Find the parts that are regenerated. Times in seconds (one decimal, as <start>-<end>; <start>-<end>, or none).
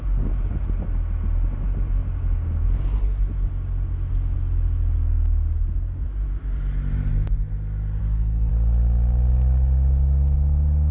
8.0-8.5